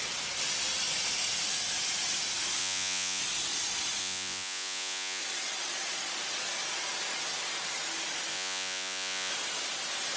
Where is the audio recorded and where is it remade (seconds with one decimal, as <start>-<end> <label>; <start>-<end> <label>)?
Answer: 0.0-2.6 recorded; 2.6-3.2 remade; 3.2-4.0 recorded; 4.0-5.2 remade; 5.2-8.3 recorded; 8.3-9.3 remade; 9.3-10.2 recorded